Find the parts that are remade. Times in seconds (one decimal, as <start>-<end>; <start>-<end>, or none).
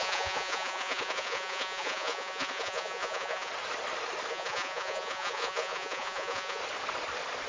0.0-3.5; 4.3-6.6